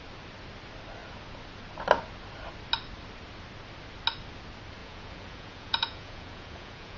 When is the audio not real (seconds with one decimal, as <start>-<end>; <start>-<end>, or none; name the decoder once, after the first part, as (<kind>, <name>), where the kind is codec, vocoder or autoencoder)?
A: 4.8-7.0 (vocoder, Vocos)